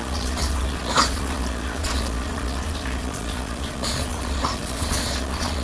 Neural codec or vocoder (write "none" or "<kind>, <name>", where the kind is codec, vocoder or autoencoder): vocoder, Vocos